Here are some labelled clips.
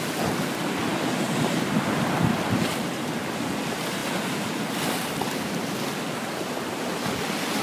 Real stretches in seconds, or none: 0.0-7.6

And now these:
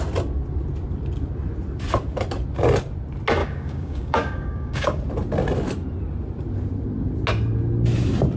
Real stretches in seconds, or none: 0.0-3.4; 5.0-8.4